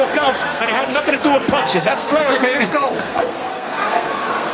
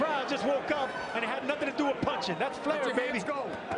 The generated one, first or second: first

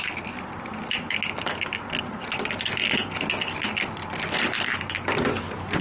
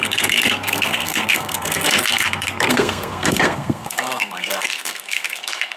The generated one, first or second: second